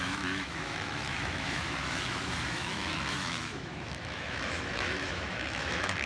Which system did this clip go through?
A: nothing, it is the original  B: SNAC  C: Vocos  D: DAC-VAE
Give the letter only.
D